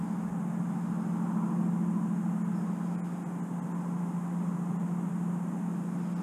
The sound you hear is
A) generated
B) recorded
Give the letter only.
B